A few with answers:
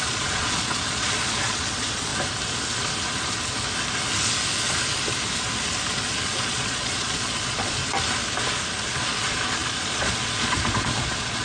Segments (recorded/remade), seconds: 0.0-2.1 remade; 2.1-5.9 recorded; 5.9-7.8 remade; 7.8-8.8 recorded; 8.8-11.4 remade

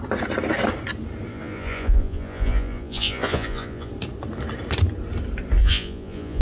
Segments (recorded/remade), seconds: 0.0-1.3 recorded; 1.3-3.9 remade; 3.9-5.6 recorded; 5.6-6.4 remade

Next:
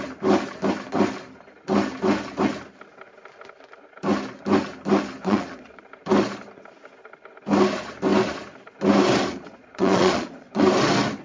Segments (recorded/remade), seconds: 0.0-5.2 recorded; 5.2-5.8 remade; 5.8-9.3 recorded; 9.3-10.6 remade; 10.6-11.2 recorded

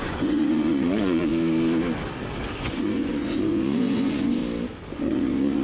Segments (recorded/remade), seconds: 0.0-1.3 remade; 1.3-2.6 recorded; 2.6-4.4 remade; 4.4-4.9 recorded; 4.9-5.6 remade

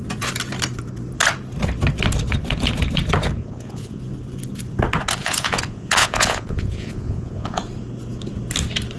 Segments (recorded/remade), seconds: 0.0-3.4 recorded; 3.4-4.0 remade; 4.0-5.2 recorded; 5.2-7.6 remade; 7.6-9.0 recorded

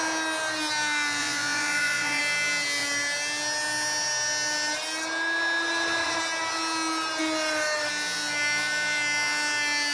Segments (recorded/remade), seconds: 0.0-1.2 recorded; 1.2-2.2 remade; 2.2-9.9 recorded